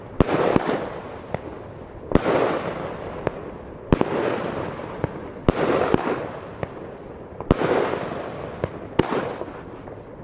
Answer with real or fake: real